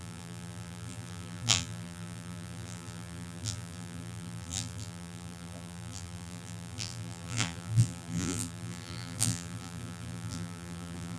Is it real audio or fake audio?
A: fake